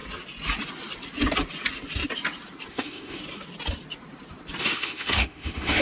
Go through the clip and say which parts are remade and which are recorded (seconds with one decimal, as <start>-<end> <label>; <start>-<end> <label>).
0.0-2.7 recorded; 2.7-3.2 remade; 3.2-4.6 recorded; 4.6-5.8 remade